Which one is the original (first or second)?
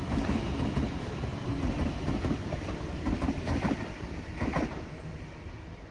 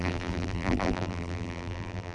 first